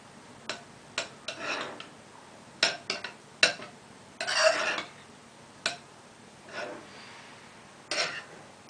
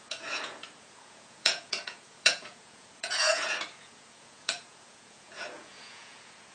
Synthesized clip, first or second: second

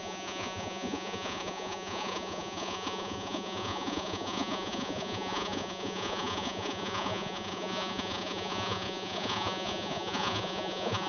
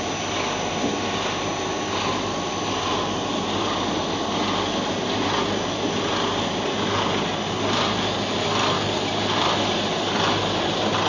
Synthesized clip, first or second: first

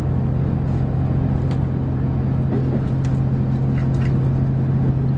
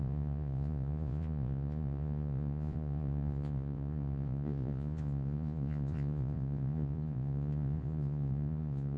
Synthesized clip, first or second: second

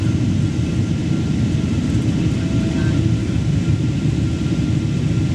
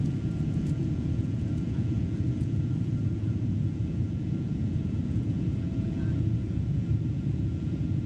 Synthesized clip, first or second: second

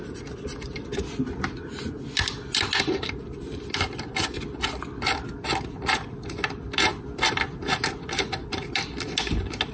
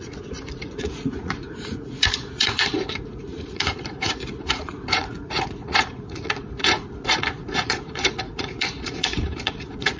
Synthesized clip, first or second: second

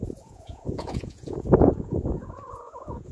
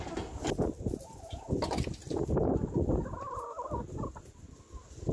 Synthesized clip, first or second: first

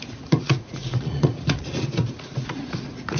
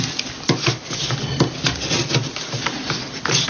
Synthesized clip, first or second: first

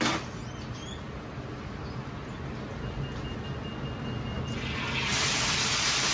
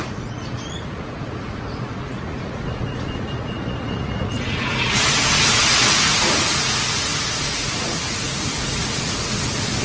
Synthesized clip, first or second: second